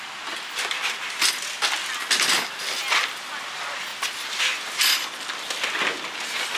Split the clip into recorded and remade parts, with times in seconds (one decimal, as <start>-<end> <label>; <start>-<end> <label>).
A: 0.0-6.6 recorded